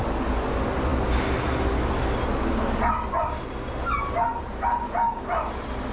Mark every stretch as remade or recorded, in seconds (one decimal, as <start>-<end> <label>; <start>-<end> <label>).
0.0-5.9 recorded